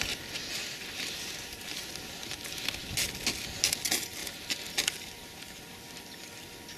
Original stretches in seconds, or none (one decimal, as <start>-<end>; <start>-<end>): 2.3-4.2; 5.6-6.8